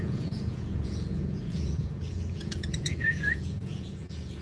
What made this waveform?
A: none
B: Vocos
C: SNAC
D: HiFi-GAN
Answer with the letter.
B